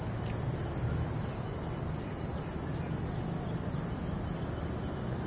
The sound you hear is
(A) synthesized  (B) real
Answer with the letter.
B